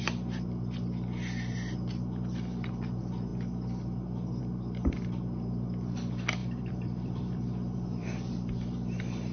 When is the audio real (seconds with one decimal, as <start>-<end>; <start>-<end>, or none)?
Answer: 0.0-6.4; 8.3-9.3